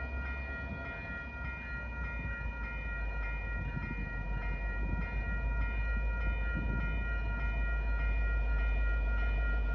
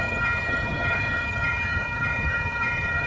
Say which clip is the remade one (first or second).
second